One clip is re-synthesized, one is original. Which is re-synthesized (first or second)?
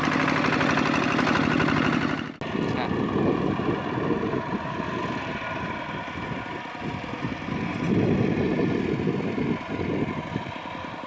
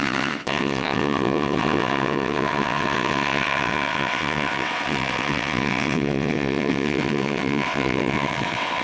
second